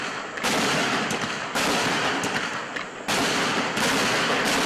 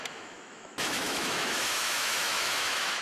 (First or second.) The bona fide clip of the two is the first